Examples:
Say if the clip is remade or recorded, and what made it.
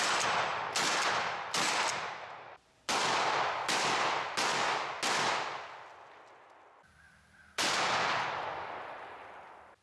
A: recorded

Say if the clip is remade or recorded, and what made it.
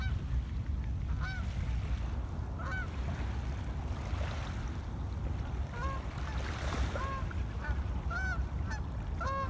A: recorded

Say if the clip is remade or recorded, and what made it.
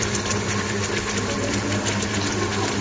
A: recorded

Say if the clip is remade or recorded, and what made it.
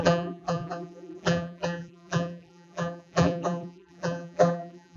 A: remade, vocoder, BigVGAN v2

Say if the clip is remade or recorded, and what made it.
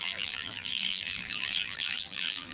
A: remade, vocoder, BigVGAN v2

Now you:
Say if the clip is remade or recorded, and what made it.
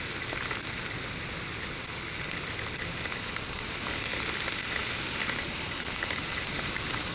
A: recorded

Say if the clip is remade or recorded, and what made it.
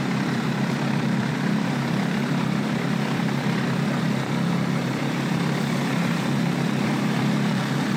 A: remade, vocoder, BigVGAN v2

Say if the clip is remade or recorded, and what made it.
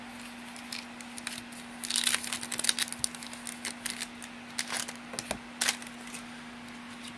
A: recorded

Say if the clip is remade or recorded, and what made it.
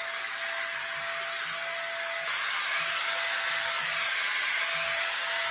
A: recorded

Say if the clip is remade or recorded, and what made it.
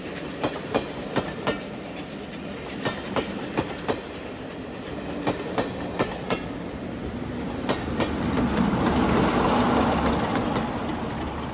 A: recorded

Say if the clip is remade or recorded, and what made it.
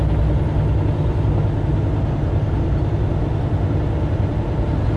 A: recorded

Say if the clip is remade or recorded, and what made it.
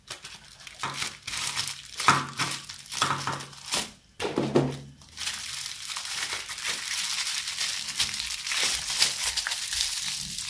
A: recorded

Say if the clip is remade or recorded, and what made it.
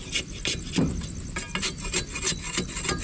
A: recorded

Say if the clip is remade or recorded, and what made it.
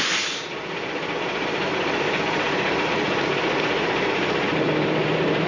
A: remade, vocoder, BigVGAN v2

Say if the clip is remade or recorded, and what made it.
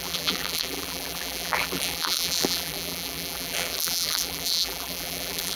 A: remade, vocoder, BigVGAN v2